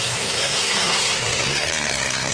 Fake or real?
fake